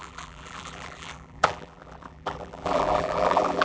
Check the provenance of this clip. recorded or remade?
remade